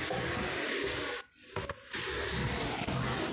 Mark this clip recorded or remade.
recorded